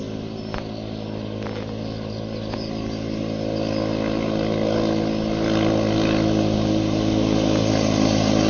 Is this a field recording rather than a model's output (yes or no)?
yes